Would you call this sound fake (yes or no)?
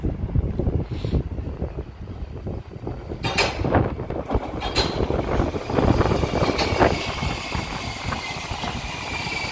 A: no